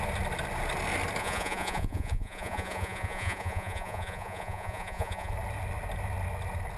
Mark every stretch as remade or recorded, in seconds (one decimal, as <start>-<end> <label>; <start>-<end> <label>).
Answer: 0.0-1.2 recorded; 1.2-5.3 remade; 5.3-6.8 recorded

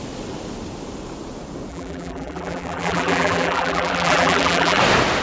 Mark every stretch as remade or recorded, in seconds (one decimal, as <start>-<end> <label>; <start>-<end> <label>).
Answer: 0.0-1.7 recorded; 1.7-4.8 remade; 4.8-5.2 recorded